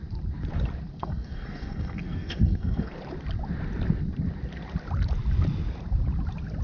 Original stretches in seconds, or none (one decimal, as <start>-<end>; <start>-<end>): 0.0-1.0; 2.9-6.6